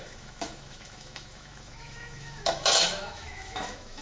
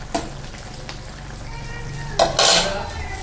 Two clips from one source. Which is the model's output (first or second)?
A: first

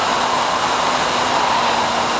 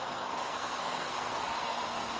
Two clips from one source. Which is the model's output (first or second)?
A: second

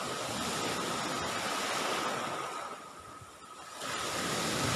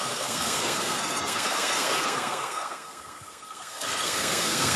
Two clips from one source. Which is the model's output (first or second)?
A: second